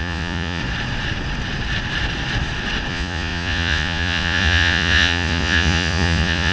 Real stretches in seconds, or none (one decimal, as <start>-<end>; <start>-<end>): 0.6-2.9